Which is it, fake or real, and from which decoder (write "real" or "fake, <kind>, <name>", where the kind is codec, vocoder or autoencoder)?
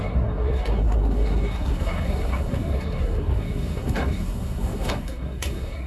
fake, codec, SNAC